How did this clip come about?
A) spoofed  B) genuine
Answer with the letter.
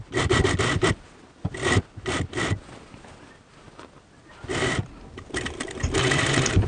B